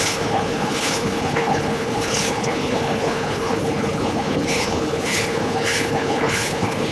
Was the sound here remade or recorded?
remade